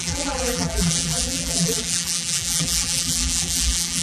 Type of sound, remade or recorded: remade